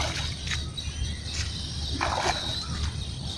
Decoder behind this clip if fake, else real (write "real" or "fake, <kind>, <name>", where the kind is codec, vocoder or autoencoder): real